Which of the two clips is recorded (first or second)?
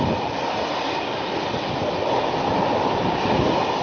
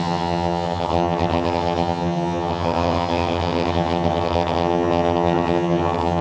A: first